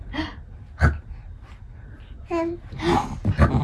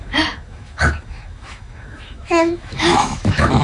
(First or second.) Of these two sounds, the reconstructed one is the second